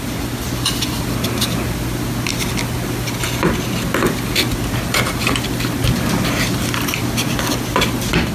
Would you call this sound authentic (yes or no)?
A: yes